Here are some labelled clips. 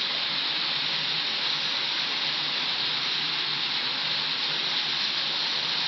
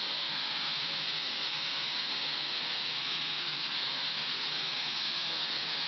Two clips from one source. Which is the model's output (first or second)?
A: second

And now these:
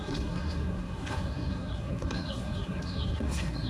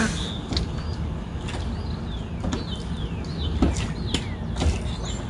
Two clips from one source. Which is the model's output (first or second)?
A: first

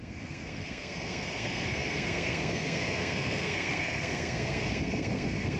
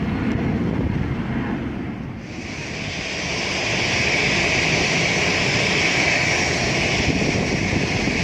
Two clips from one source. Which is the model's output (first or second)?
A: first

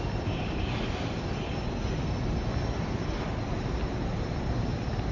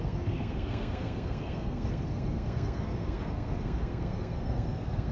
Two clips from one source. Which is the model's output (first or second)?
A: second